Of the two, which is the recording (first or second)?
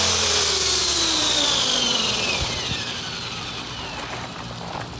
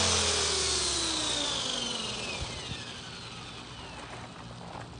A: second